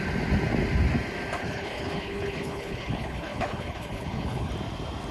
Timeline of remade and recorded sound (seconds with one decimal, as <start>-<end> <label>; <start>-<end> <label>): 0.0-1.4 recorded; 1.4-4.5 remade; 4.5-5.1 recorded